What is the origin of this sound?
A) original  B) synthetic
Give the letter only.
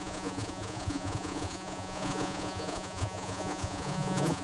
B